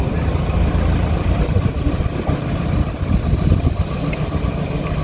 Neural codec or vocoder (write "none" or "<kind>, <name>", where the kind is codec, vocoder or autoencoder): vocoder, BigVGAN v2